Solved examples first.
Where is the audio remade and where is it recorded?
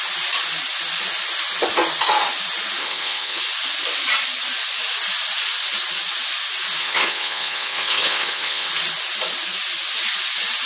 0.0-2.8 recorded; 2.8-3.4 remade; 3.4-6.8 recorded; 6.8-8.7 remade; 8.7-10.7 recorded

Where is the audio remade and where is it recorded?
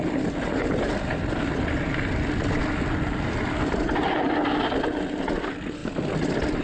0.0-6.6 recorded